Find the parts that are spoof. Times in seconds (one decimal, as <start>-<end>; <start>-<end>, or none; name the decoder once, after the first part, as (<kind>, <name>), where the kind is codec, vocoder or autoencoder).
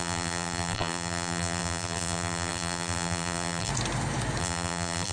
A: 0.0-3.7 (vocoder, BigVGAN v2); 4.4-5.1